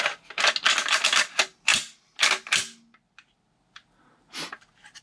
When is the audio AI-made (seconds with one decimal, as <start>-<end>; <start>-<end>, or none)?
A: none